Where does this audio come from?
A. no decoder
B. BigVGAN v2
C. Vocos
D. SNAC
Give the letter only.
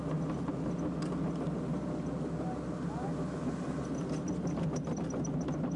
A